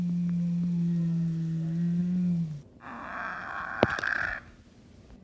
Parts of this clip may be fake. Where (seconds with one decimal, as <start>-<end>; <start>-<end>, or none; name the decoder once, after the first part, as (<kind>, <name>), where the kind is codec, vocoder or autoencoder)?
none